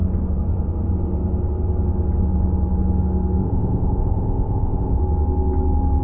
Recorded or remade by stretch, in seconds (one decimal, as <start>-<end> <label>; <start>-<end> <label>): 0.0-3.4 recorded; 3.4-5.0 remade; 5.0-6.0 recorded